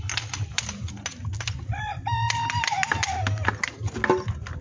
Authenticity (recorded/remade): recorded